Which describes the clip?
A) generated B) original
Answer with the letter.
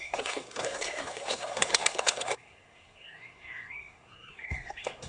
A